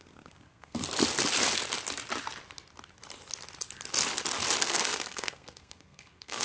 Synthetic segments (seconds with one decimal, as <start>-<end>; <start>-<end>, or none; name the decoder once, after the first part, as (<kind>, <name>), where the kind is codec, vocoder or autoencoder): 0.0-0.8 (codec, SNAC); 4.6-6.4